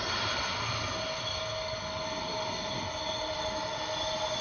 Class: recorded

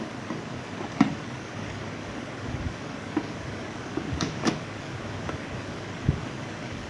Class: remade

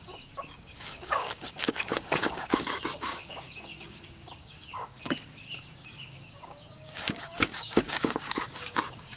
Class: remade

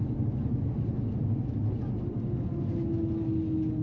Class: recorded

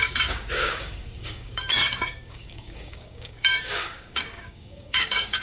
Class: remade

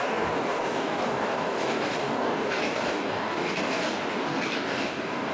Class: remade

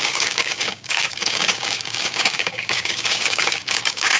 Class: remade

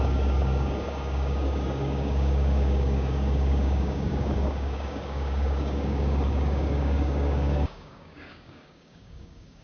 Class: remade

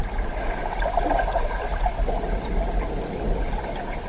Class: recorded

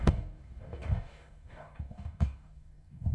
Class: remade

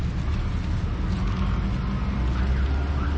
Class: recorded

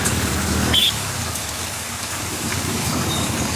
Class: remade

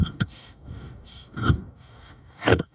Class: remade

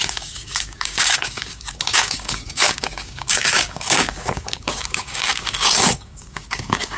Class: remade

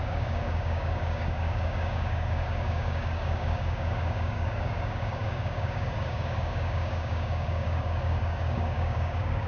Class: remade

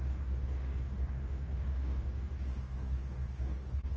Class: remade